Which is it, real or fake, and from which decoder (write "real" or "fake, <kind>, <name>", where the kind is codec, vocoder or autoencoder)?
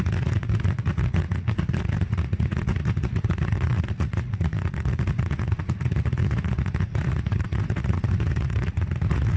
fake, vocoder, Vocos